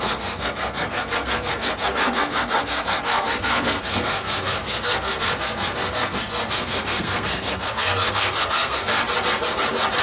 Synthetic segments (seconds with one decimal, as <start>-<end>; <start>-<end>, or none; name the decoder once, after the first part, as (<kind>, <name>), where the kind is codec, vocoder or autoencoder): 0.0-9.0 (codec, SNAC)